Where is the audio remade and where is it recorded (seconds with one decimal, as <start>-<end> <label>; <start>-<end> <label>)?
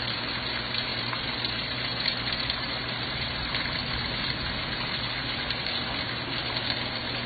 0.0-0.9 recorded; 0.9-3.5 remade; 3.5-7.3 recorded